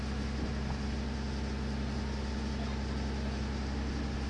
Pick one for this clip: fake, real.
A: real